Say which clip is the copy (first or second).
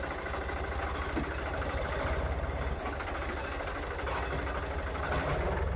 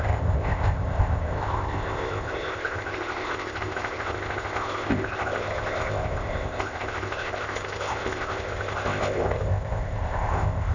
second